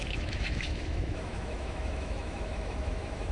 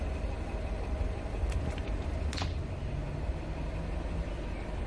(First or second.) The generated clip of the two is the first